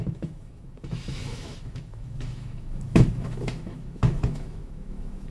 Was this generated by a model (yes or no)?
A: yes